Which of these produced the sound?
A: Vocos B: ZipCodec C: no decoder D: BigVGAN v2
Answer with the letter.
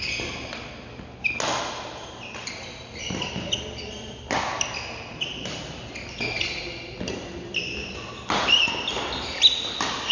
C